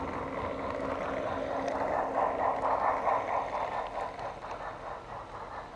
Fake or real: real